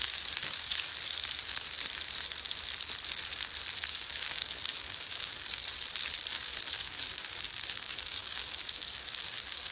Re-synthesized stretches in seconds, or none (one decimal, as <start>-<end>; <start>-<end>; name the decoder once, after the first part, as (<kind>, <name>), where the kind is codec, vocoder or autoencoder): 0.0-0.9 (codec, DAC); 3.9-5.6; 6.3-9.7